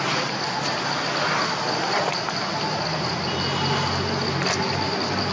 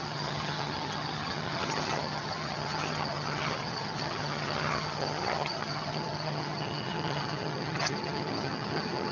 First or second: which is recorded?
first